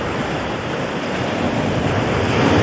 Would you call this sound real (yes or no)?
no